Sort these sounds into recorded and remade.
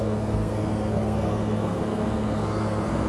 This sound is remade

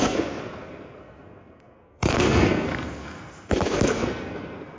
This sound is remade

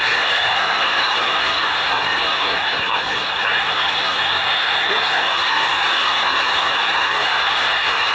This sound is remade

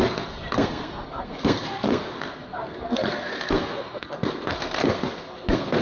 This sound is remade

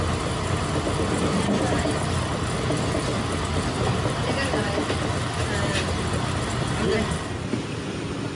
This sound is recorded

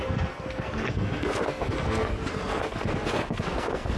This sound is remade